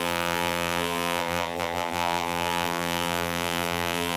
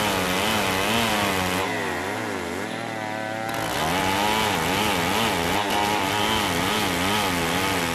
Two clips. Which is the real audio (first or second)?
second